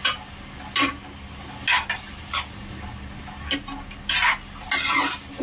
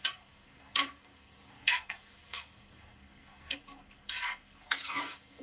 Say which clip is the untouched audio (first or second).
first